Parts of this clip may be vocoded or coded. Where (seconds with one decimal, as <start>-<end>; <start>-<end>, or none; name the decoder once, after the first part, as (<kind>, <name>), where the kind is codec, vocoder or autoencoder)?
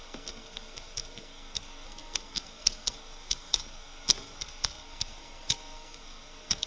0.0-6.7 (codec, SNAC)